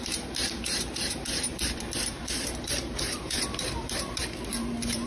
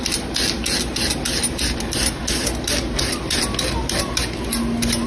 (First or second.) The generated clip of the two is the first